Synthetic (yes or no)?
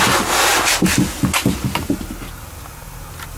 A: no